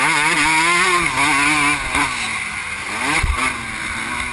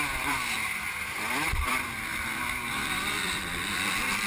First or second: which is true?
first